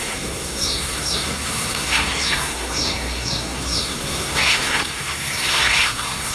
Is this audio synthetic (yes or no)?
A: yes